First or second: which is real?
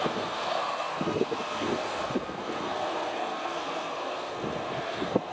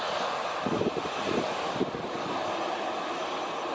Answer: second